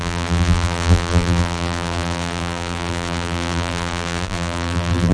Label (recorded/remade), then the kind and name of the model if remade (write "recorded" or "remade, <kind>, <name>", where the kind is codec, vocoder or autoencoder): remade, vocoder, BigVGAN v2